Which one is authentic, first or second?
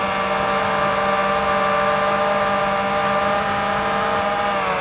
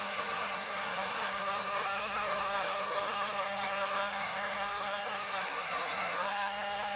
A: first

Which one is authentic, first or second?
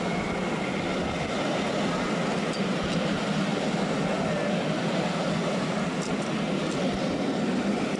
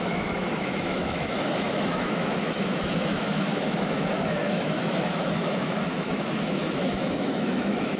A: first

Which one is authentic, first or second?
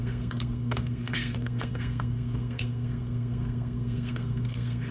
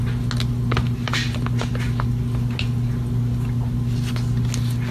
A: second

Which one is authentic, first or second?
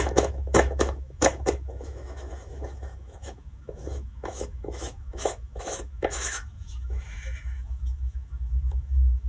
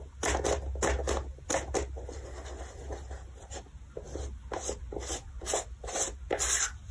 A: second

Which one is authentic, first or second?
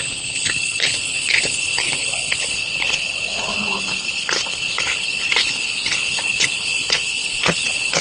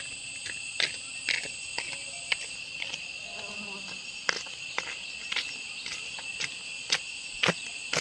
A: second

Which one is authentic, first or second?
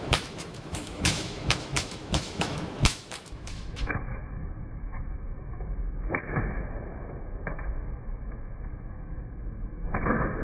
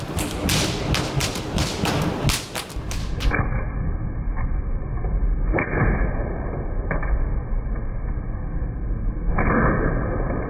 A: second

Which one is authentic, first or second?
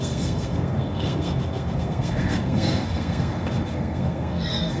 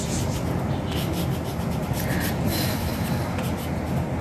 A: second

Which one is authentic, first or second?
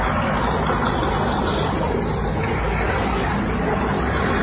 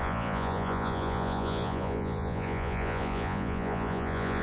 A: first